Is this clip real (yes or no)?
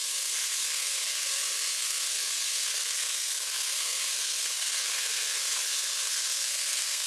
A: no